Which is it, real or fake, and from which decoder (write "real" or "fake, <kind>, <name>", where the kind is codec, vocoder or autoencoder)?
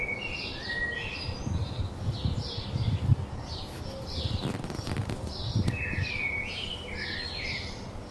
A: real